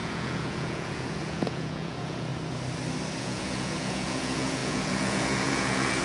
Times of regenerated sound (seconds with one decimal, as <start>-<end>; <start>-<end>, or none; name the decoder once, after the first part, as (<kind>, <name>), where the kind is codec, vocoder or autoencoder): 0.0-2.3 (vocoder, Vocos); 3.2-6.0